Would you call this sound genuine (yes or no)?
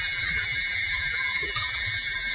no